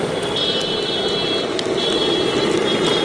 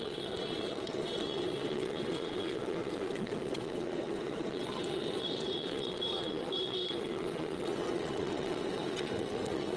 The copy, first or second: second